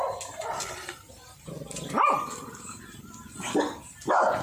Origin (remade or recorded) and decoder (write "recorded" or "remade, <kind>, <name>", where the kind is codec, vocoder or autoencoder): recorded